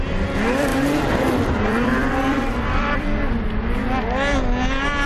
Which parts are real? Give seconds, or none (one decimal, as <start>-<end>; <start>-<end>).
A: 0.0-0.7; 3.3-5.1